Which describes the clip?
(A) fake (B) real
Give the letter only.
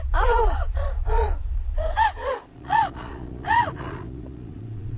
A